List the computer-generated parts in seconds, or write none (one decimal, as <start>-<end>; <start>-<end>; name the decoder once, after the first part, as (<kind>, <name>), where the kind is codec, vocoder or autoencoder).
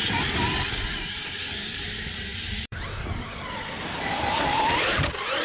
1.7-5.4 (vocoder, BigVGAN v2)